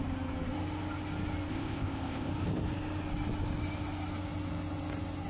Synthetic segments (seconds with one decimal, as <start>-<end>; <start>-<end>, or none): 1.5-2.3